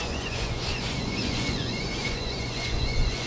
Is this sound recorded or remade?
remade